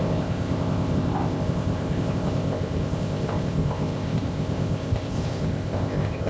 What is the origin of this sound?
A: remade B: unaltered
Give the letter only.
A